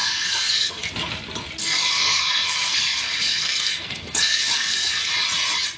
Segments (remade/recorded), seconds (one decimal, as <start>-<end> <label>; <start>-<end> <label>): 0.0-0.9 remade; 0.9-1.6 recorded; 1.6-5.1 remade; 5.1-5.8 recorded